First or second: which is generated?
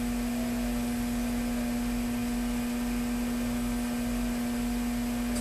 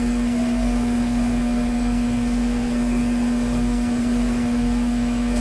second